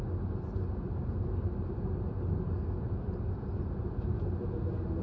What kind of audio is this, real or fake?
real